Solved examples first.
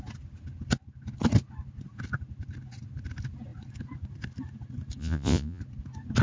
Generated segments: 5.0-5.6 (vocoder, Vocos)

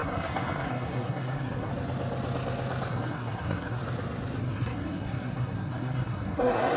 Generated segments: 0.0-1.7 (codec, SNAC); 2.9-3.8; 4.4-6.8

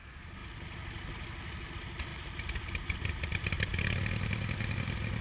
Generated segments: 2.1-3.5 (vocoder, BigVGAN v2)